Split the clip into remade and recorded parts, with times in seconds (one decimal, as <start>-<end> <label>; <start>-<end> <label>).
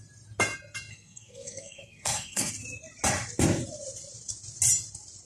0.0-0.9 recorded; 0.9-2.5 remade; 2.5-5.2 recorded